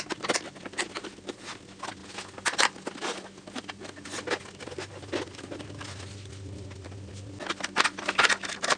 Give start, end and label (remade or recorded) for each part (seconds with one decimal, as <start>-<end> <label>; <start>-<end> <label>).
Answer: 0.0-8.8 recorded